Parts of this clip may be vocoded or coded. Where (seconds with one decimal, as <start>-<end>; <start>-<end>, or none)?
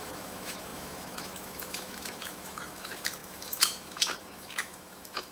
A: 0.0-5.3